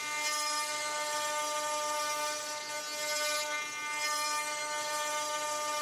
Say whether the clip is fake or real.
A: real